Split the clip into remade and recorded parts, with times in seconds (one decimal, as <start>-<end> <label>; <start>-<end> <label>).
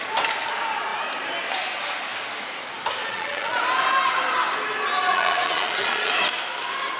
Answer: 0.0-3.0 recorded; 3.0-3.6 remade; 3.6-5.1 recorded; 5.1-6.1 remade; 6.1-7.0 recorded